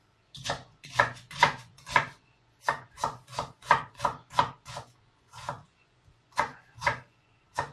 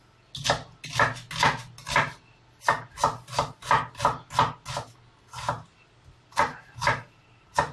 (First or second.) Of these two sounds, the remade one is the first